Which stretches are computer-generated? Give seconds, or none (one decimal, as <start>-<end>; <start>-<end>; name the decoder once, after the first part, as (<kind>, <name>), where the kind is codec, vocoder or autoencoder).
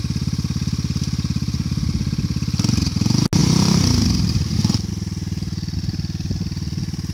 none